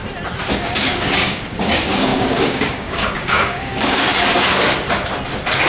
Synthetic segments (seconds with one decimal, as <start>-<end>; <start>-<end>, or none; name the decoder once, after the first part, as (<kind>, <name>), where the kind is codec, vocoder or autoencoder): 0.6-4.1 (codec, DAC)